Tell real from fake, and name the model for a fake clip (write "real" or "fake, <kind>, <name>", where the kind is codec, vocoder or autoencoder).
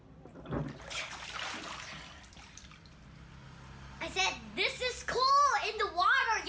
real